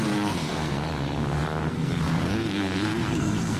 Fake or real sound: fake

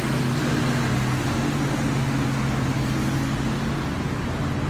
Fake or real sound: real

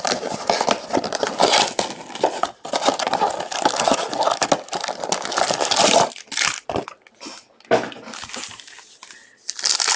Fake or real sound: real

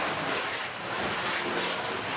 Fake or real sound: real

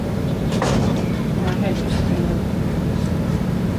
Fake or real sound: fake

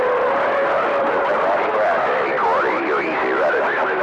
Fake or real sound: real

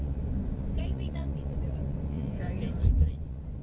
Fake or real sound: fake